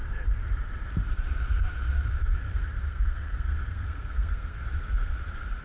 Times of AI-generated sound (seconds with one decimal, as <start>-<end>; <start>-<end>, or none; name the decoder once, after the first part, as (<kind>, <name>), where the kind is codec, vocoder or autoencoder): 2.5-4.6 (codec, SNAC)